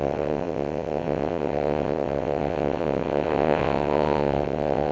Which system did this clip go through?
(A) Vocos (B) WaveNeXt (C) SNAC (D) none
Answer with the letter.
B